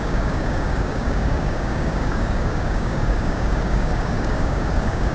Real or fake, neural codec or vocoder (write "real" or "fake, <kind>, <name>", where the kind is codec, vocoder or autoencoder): fake, codec, DAC